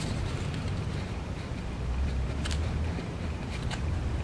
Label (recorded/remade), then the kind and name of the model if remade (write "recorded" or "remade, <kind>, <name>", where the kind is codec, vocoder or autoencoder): remade, vocoder, BigVGAN v2